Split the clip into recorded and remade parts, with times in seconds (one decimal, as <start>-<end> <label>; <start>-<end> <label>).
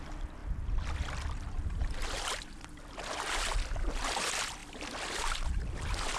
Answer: 0.0-0.4 recorded; 0.4-2.7 remade; 2.7-4.6 recorded; 4.6-6.2 remade